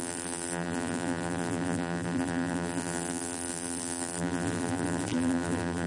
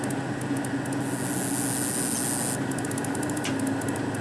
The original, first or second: second